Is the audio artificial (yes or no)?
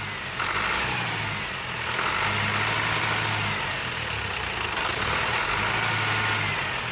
no